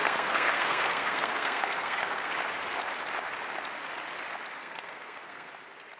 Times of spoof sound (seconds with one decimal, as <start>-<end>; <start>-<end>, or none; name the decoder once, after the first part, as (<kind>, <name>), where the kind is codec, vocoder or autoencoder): 0.0-2.3 (codec, SNAC); 4.6-5.5